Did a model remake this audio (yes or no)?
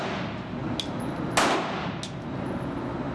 no